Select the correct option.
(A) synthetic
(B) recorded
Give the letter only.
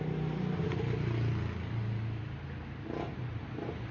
B